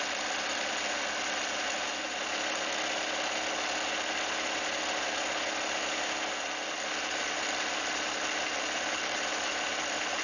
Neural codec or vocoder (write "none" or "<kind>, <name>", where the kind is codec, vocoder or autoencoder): none